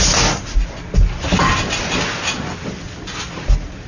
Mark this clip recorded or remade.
recorded